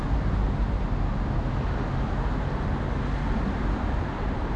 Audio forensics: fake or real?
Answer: real